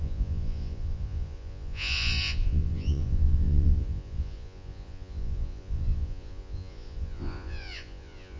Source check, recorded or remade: remade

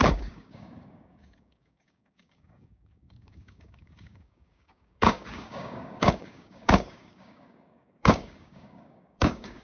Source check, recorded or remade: remade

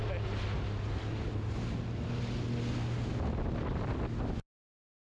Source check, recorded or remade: recorded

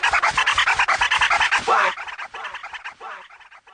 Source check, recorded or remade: recorded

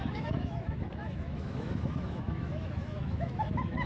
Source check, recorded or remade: remade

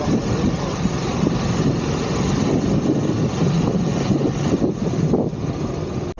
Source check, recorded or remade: recorded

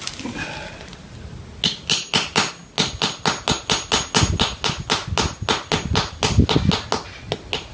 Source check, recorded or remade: recorded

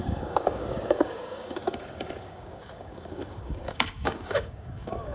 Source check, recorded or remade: remade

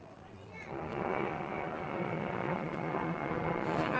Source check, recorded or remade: remade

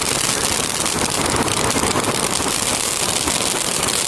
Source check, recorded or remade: recorded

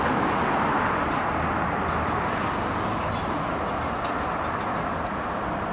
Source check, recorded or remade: recorded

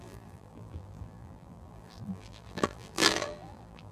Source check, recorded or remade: remade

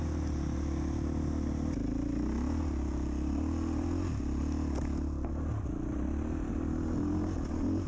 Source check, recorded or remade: recorded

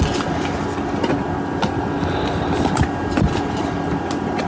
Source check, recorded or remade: recorded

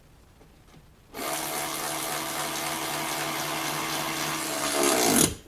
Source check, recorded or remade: recorded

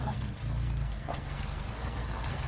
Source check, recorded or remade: remade